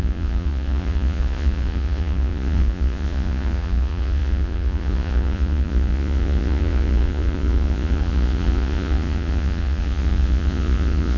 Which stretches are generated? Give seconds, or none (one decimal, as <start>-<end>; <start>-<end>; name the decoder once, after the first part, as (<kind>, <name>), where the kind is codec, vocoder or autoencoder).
0.0-11.2 (vocoder, Vocos)